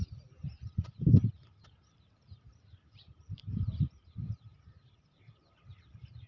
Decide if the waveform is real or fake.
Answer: fake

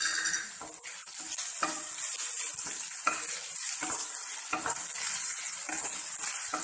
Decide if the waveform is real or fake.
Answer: real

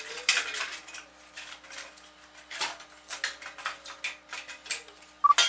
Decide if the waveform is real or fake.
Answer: real